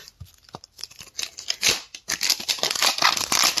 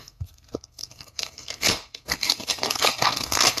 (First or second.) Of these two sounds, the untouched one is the first